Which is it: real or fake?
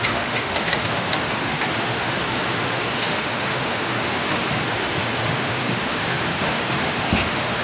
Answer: fake